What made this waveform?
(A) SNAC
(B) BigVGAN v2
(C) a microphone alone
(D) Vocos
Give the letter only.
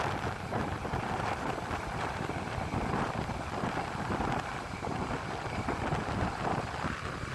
C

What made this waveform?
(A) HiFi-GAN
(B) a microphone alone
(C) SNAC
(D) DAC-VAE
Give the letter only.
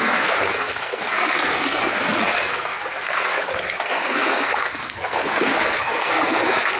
C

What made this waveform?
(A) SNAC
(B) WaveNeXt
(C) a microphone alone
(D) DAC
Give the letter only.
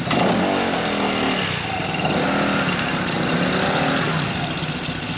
C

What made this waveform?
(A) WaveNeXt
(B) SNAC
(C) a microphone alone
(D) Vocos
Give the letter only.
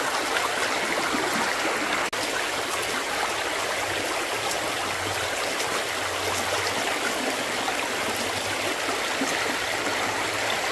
C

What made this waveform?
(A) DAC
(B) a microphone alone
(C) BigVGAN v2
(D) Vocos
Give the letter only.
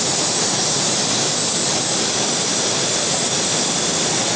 B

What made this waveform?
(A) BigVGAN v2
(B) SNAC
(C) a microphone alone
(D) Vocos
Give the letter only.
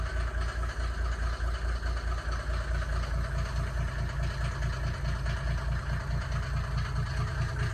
C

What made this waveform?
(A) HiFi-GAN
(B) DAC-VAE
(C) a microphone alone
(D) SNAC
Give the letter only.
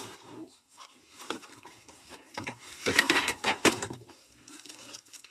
D